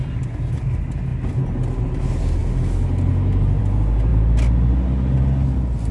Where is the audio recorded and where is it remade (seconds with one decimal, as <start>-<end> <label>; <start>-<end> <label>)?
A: 0.0-5.9 recorded